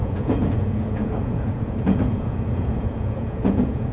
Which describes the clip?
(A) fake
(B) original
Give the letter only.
A